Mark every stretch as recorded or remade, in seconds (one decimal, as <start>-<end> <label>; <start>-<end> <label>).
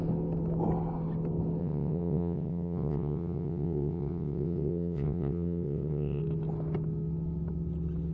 0.0-1.6 recorded; 1.6-6.2 remade; 6.2-8.1 recorded